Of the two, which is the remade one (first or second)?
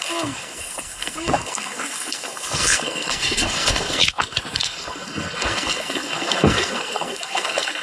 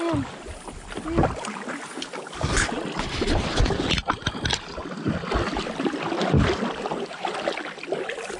first